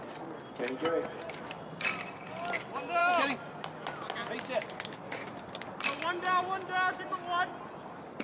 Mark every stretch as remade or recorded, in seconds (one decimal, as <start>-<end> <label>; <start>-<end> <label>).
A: 0.0-8.2 recorded